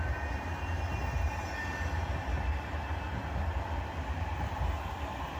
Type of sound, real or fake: real